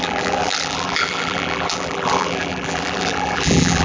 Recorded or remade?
remade